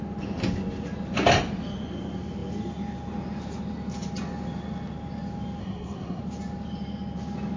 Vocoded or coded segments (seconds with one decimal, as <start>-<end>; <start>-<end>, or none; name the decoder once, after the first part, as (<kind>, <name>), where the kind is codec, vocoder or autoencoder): 5.6-6.2 (codec, SNAC)